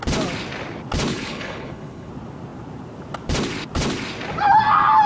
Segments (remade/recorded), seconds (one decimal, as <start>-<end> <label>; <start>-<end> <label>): 0.0-1.1 recorded; 1.1-2.1 remade; 2.1-5.1 recorded